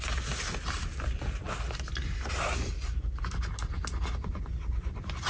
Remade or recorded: recorded